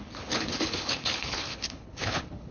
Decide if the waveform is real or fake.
fake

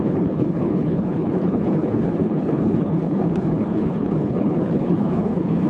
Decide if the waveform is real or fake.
fake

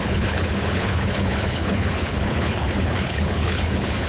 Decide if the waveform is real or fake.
fake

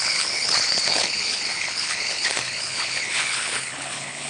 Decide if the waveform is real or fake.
fake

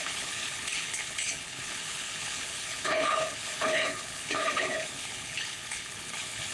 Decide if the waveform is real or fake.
fake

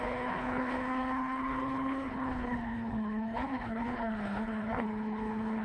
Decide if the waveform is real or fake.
fake